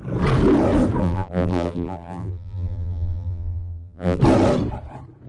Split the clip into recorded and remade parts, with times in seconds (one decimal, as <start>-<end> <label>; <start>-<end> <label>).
0.0-1.0 recorded; 1.0-4.2 remade; 4.2-5.3 recorded